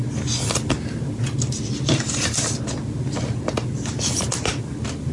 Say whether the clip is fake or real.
real